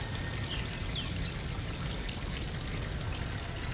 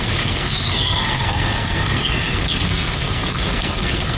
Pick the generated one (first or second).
second